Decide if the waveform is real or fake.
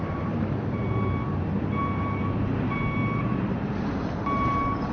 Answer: fake